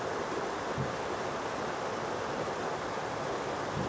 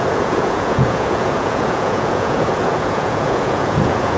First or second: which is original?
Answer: first